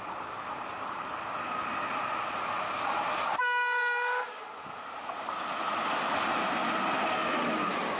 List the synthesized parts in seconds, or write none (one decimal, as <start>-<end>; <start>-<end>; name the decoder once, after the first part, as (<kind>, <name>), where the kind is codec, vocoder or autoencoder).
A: 3.3-4.4 (codec, DAC)